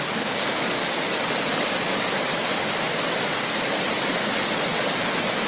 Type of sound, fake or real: real